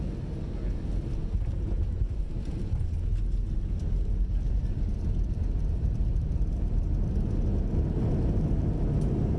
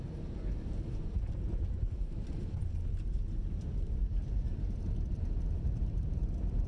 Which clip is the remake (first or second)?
second